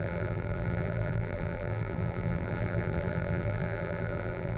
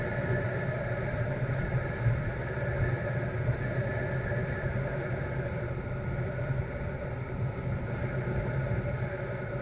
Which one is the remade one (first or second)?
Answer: first